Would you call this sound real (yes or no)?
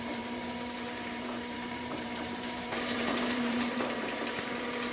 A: no